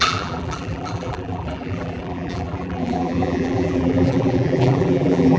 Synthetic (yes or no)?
yes